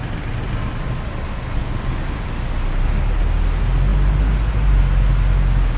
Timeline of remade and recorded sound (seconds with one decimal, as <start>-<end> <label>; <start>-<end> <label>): 0.0-5.8 recorded